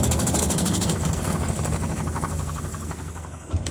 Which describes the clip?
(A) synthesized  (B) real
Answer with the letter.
A